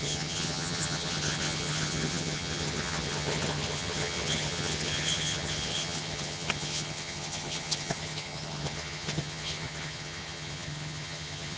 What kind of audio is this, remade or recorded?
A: remade